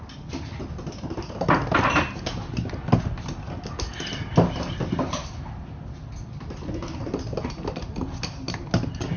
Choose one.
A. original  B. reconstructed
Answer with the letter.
A